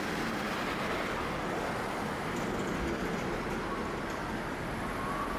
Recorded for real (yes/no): yes